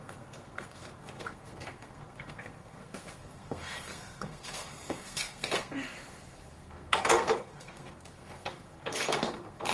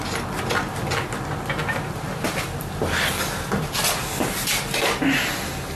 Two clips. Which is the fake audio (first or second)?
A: first